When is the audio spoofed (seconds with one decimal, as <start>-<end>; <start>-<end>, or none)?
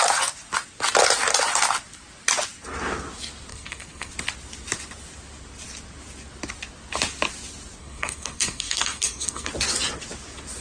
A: 3.5-4.1; 7.8-9.5